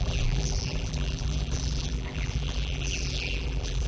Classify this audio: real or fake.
fake